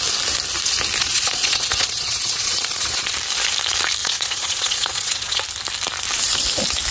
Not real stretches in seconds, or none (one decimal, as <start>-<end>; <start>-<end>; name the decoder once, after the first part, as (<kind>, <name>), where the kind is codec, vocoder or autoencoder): 1.0-3.1 (vocoder, Vocos); 4.0-5.4